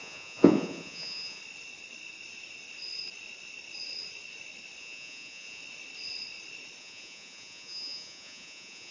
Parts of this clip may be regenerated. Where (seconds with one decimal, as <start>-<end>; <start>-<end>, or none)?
0.0-1.4; 4.8-5.6; 6.8-8.9